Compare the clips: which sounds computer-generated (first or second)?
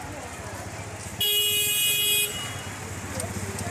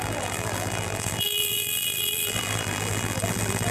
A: second